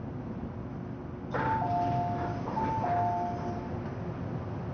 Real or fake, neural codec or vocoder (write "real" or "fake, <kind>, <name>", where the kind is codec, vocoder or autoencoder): real